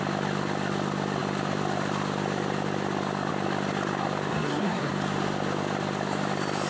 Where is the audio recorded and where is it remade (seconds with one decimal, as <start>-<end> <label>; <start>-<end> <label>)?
0.0-4.3 recorded; 4.3-4.9 remade; 4.9-6.7 recorded